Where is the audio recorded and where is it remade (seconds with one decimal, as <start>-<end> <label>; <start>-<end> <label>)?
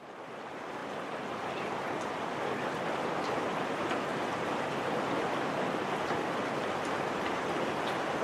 0.0-8.2 recorded